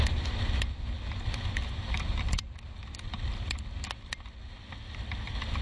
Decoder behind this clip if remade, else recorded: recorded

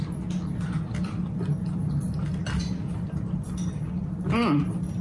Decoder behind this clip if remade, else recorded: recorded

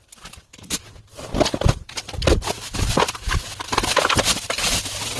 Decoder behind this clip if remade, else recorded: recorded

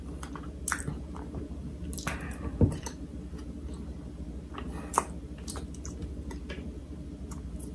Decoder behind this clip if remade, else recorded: recorded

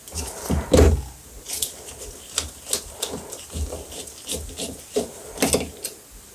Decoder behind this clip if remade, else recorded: recorded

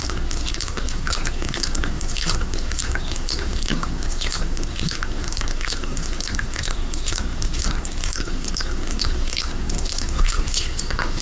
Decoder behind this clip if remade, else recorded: remade, codec, SNAC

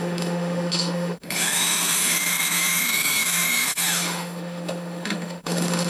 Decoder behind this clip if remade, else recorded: remade, autoencoder, DAC-VAE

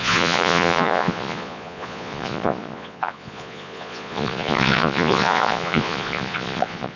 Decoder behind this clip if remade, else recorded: remade, vocoder, Vocos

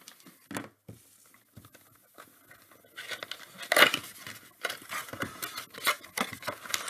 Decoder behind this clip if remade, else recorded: recorded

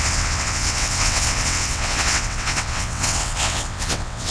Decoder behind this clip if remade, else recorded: remade, vocoder, WaveNeXt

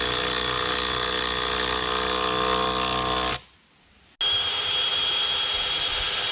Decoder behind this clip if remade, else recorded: recorded